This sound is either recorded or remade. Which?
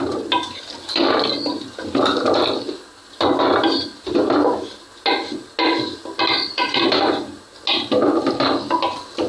recorded